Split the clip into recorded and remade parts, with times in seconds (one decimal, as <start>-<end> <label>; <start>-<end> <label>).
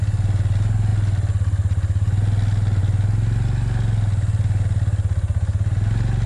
0.0-6.3 recorded